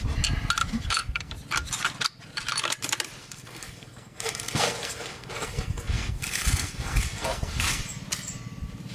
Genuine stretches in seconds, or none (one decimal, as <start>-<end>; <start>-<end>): 0.0-0.6; 1.3-3.2; 7.8-8.9